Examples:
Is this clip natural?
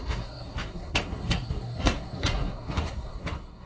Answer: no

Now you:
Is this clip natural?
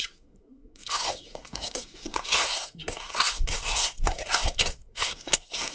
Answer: no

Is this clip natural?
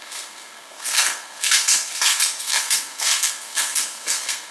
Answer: no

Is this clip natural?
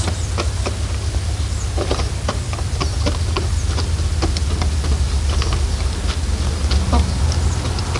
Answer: yes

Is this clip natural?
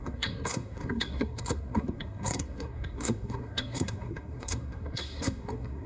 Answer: no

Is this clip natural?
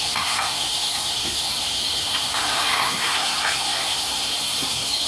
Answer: no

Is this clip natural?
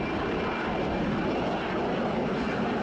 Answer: yes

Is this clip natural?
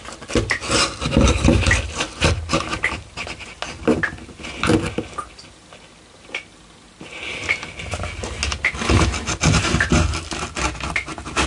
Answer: yes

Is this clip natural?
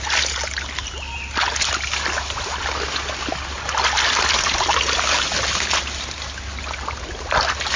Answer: yes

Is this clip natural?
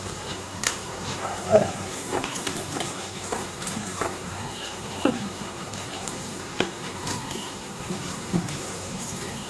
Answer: no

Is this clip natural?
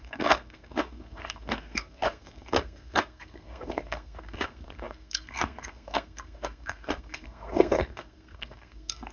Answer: no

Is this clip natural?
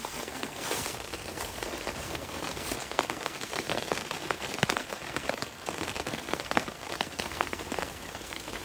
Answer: no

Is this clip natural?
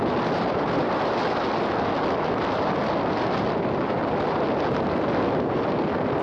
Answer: yes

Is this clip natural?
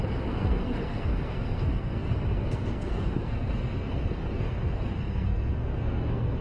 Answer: no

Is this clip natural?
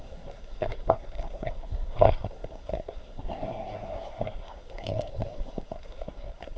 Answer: no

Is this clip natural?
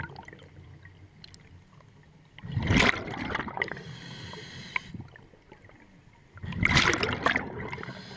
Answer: yes